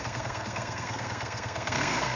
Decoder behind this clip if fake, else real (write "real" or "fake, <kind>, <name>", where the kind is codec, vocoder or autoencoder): fake, codec, SNAC